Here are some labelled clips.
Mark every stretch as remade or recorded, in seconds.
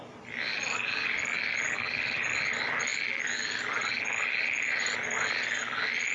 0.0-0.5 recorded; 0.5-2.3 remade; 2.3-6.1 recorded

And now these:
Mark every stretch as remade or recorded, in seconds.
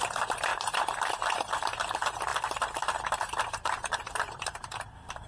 0.0-2.3 remade; 2.3-3.0 recorded; 3.0-5.3 remade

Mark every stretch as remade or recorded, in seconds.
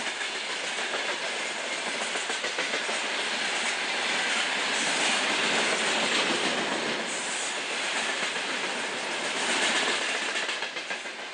0.0-7.2 recorded; 7.2-8.5 remade; 8.5-11.3 recorded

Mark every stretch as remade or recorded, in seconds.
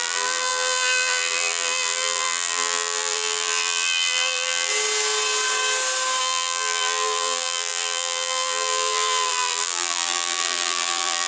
0.0-4.7 remade; 4.7-6.2 recorded; 6.2-11.3 remade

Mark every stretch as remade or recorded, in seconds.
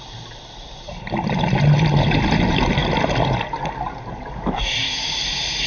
0.0-5.7 recorded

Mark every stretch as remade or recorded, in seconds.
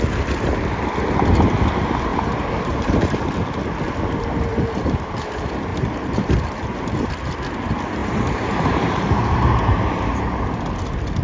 0.0-2.1 recorded; 2.1-3.3 remade; 3.3-4.5 recorded; 4.5-5.3 remade; 5.3-5.7 recorded; 5.7-7.1 remade; 7.1-8.0 recorded; 8.0-10.2 remade; 10.2-11.2 recorded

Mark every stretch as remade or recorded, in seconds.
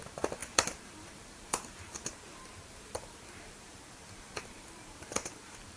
0.0-5.8 remade